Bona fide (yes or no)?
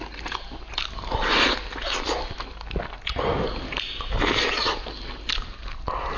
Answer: yes